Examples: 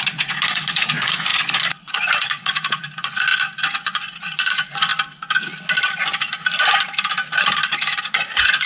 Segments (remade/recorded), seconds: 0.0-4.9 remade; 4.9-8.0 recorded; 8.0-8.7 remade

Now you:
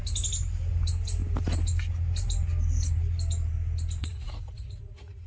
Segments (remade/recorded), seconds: 0.0-4.0 recorded; 4.0-5.3 remade

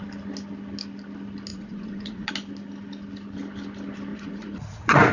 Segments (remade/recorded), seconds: 0.0-1.5 recorded; 1.5-2.3 remade; 2.3-4.1 recorded; 4.1-5.1 remade

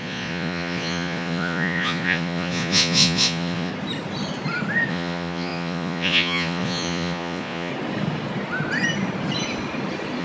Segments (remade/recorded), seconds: 0.0-3.7 remade; 3.7-4.9 recorded; 4.9-7.7 remade; 7.7-10.2 recorded